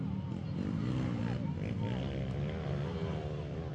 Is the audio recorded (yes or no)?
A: yes